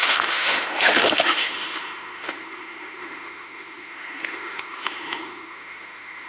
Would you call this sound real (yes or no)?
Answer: no